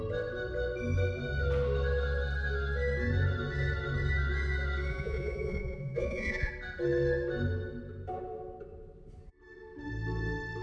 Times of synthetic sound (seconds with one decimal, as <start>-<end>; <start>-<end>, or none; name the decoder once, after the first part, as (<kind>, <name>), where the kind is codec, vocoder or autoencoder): 4.9-6.5 (vocoder, Vocos)